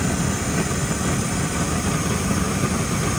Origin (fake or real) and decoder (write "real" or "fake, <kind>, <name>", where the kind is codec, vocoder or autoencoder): real